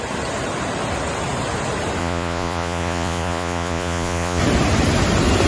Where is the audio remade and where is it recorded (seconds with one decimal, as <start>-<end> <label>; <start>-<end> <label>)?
0.0-2.0 recorded; 2.0-4.4 remade; 4.4-5.5 recorded